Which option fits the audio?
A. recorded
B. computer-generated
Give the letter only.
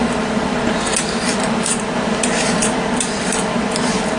B